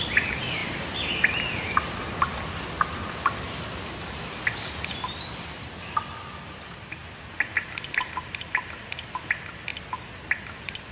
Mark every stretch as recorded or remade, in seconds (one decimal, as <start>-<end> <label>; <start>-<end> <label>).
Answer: 0.0-7.0 remade; 7.0-8.3 recorded; 8.3-9.7 remade; 9.7-10.9 recorded